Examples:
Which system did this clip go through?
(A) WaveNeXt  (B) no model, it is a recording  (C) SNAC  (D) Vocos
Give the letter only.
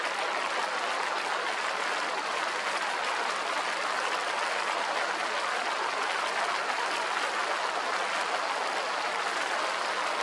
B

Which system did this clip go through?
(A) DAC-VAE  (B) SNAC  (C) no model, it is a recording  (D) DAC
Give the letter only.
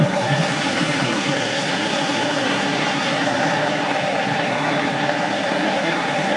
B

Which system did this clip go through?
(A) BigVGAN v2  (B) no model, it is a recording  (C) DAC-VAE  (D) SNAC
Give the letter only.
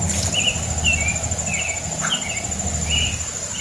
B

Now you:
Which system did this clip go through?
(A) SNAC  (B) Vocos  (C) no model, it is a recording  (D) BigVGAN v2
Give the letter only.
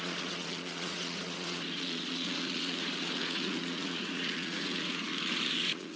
B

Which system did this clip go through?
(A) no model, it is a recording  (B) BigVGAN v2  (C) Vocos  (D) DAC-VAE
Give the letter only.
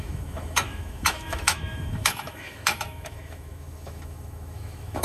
D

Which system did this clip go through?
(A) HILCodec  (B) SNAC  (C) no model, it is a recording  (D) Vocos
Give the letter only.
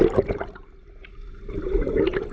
C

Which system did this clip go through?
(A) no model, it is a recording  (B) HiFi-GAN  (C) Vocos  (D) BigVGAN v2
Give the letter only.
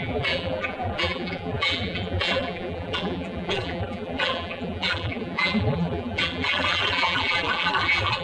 D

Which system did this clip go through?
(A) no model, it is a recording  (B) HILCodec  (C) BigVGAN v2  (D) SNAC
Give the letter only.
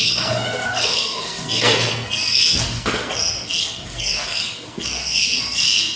D